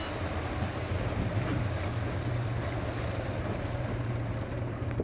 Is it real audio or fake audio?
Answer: real